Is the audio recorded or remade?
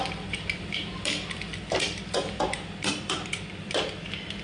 remade